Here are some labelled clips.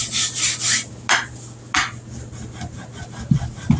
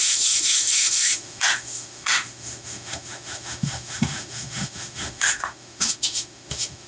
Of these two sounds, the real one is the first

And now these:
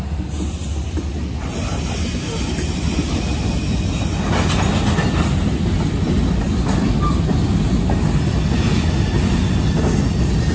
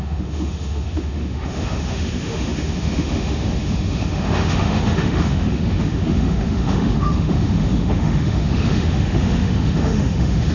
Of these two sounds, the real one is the first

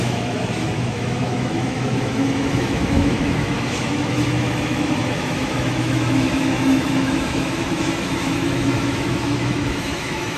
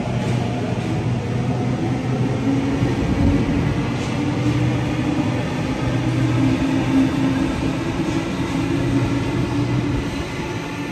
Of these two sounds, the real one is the second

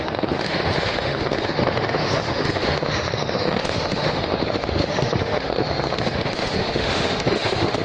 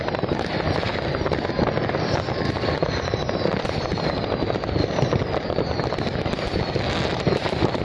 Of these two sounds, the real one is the second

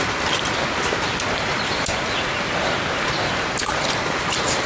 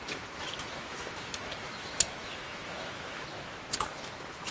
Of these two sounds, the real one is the first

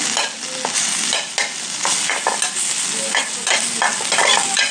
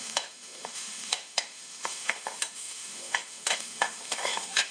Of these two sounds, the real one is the first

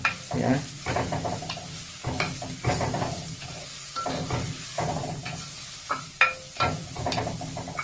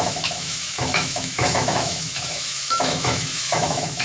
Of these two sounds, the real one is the first